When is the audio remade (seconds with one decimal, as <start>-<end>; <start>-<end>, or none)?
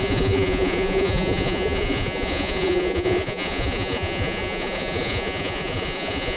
0.0-6.4